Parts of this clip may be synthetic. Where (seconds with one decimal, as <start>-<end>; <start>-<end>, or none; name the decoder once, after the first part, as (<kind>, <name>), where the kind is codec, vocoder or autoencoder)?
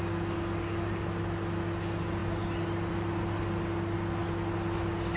none